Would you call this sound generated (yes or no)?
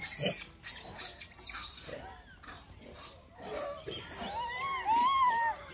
no